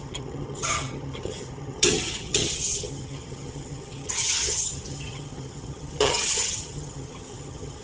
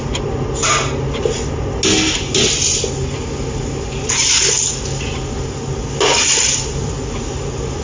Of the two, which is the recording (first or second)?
second